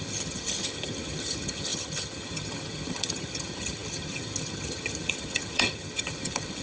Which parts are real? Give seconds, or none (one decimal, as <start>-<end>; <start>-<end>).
none